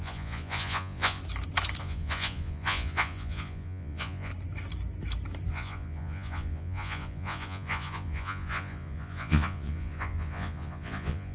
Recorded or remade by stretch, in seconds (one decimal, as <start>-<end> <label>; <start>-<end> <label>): 0.0-1.2 remade; 1.2-1.8 recorded; 1.8-4.3 remade; 4.3-5.5 recorded; 5.5-11.3 remade